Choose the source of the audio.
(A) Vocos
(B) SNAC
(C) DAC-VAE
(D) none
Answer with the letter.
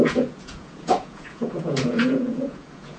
A